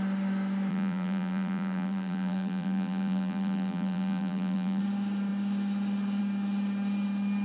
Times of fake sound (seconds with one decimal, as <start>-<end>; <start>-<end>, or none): 0.7-4.8